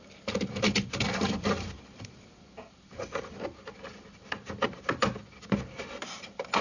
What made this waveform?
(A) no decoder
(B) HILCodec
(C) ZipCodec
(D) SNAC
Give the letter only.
A